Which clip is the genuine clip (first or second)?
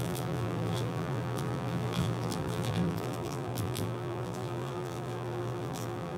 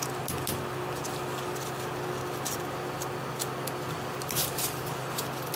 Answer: second